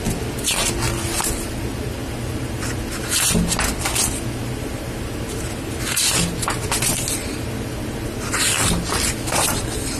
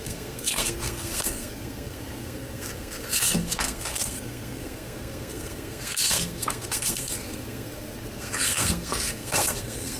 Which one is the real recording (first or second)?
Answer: first